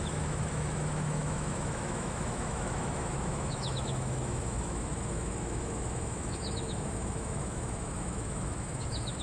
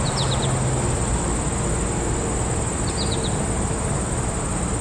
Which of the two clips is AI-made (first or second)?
first